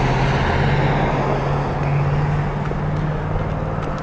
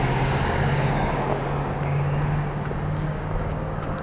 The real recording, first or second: first